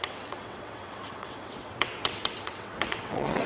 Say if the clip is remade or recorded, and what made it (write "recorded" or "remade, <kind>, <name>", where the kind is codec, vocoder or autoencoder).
remade, vocoder, WaveNeXt